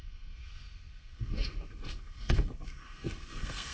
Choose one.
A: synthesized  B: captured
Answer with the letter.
A